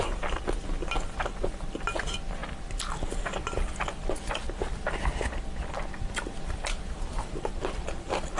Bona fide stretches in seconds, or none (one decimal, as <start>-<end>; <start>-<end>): 0.0-8.4